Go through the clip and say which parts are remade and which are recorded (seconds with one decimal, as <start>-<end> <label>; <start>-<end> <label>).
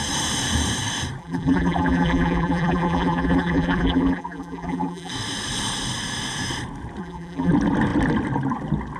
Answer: 0.0-1.2 recorded; 1.2-5.1 remade; 5.1-7.0 recorded; 7.0-7.5 remade; 7.5-9.0 recorded